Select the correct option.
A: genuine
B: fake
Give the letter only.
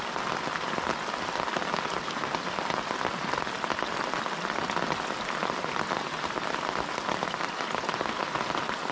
A